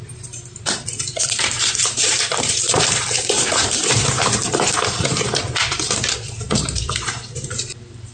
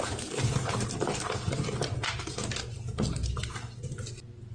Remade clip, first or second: first